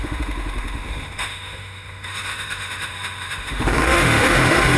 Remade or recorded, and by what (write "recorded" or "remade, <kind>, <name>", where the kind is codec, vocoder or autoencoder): remade, autoencoder, DAC-VAE